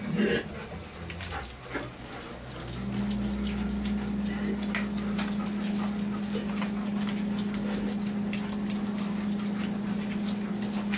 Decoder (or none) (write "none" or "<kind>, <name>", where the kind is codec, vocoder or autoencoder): none